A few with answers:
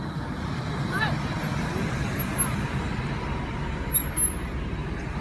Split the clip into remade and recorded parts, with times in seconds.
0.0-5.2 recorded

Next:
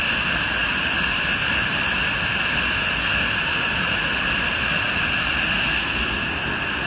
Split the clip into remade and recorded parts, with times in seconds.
0.0-6.9 recorded